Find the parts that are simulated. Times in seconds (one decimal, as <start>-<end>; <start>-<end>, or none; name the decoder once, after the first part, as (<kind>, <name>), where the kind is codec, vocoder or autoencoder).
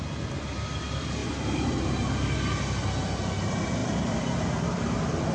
1.2-1.8 (vocoder, BigVGAN v2); 3.8-5.3